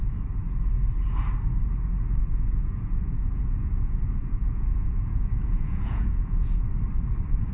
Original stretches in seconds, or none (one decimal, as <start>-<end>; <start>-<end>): 0.0-2.2; 6.7-7.5